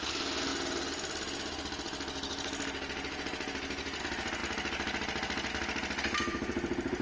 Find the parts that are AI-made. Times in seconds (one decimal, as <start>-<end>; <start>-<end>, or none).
none